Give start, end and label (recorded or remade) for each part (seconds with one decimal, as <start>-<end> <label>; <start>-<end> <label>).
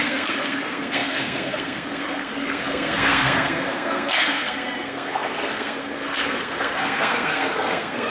0.0-8.1 remade